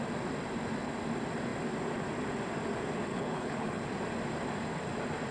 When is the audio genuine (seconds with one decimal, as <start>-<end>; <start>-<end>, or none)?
0.0-3.1; 3.9-5.3